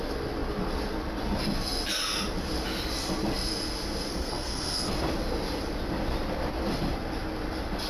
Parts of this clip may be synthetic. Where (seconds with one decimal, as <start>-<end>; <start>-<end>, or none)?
4.1-4.9